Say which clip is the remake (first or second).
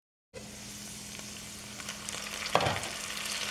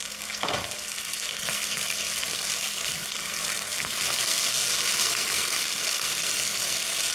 second